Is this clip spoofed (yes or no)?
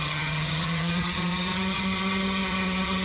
yes